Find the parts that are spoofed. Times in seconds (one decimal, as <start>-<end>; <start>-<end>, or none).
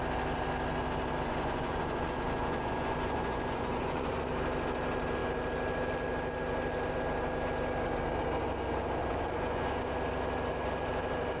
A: 1.3-4.3; 9.0-9.9